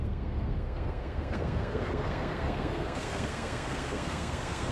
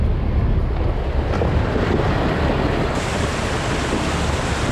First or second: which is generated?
first